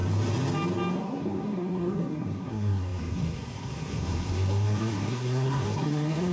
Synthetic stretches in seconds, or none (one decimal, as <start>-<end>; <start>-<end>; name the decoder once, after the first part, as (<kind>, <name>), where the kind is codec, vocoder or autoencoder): 1.0-6.3 (codec, SNAC)